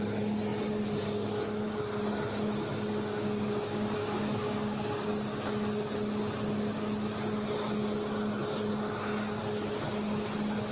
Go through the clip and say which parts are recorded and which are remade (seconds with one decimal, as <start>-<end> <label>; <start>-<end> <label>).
0.0-2.7 recorded; 2.7-5.1 remade; 5.1-10.7 recorded